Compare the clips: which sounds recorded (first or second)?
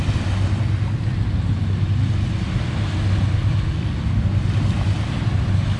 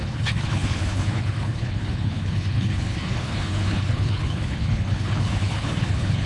first